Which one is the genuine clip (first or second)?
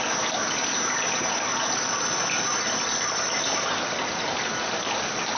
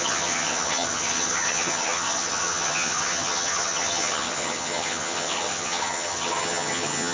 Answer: first